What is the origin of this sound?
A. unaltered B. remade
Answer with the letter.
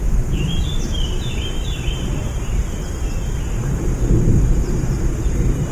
B